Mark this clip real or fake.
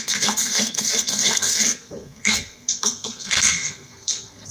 fake